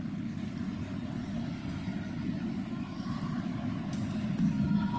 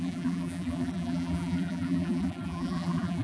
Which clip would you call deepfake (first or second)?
second